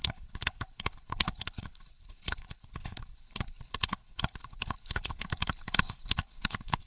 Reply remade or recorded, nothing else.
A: remade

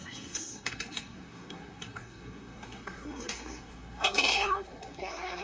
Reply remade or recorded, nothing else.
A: remade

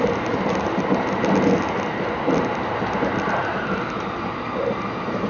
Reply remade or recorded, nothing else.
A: recorded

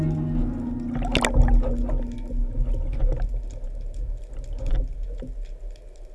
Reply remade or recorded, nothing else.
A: recorded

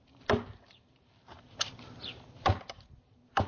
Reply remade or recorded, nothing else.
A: remade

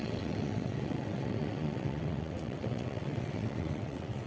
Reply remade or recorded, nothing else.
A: remade